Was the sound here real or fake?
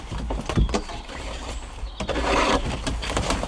real